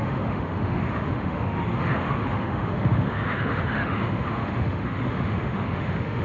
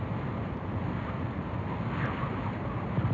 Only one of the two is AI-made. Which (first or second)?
first